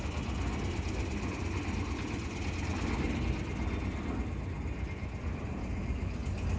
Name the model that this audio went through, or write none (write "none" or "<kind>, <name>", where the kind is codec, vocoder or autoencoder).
none